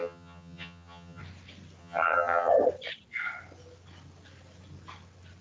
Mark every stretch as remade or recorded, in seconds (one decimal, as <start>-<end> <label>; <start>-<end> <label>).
0.0-1.2 remade; 1.2-1.8 recorded; 1.8-2.5 remade; 2.5-5.4 recorded